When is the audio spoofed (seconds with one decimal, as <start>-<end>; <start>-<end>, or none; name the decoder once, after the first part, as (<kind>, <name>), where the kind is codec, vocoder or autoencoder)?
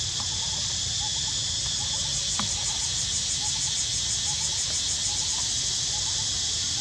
none